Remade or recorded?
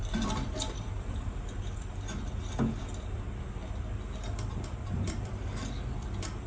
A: recorded